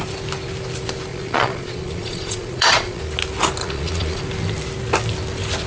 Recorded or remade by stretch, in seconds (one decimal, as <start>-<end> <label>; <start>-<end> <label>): 0.0-1.1 recorded; 1.1-3.0 remade; 3.0-3.6 recorded; 3.6-4.2 remade; 4.2-5.7 recorded